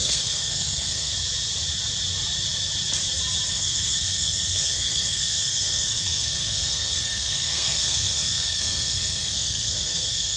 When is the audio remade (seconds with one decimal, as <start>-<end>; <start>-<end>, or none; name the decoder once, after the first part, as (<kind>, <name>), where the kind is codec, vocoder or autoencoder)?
0.0-1.1 (codec, SNAC); 3.5-10.4